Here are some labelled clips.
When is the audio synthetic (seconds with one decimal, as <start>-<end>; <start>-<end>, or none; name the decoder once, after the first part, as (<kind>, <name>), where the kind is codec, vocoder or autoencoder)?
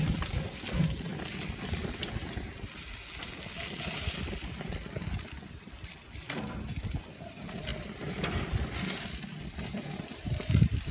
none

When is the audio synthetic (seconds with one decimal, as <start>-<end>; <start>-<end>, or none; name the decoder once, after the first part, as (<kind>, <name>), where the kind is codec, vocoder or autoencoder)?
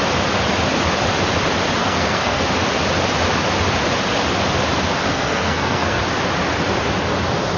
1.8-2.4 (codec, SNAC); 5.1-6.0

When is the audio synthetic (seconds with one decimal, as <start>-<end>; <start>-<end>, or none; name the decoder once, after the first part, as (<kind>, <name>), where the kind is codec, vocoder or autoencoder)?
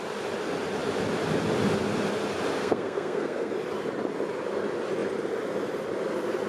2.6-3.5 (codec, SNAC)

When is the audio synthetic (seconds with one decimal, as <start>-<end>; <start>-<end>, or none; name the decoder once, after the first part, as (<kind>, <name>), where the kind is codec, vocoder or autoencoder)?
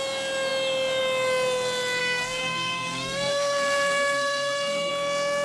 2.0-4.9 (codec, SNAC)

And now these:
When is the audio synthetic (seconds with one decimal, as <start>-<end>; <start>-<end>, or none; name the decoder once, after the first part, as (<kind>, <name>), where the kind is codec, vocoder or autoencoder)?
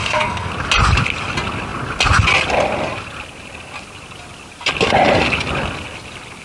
0.0-0.5 (codec, SNAC)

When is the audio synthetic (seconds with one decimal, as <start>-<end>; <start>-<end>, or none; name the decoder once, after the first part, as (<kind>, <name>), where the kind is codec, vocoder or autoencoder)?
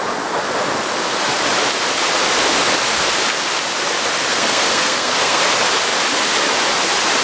4.3-5.4 (codec, SNAC)